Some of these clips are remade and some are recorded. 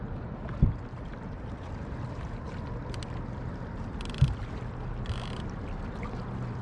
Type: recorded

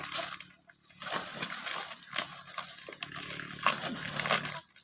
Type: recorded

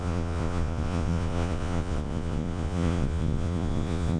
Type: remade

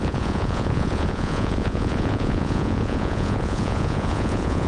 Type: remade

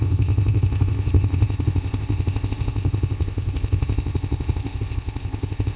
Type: remade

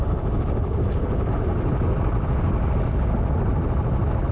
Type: recorded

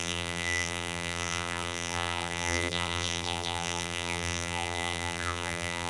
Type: remade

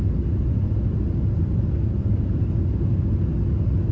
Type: recorded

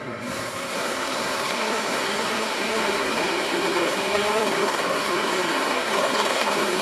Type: remade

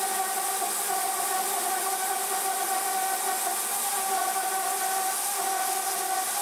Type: recorded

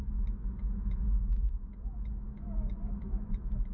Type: remade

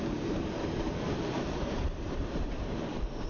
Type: remade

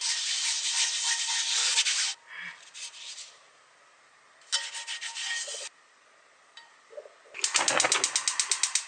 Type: recorded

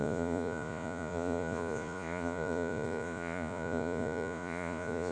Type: remade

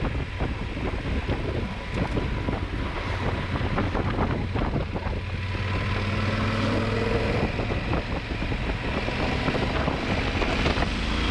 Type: recorded